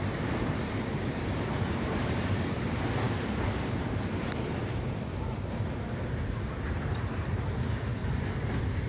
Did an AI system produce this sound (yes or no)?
yes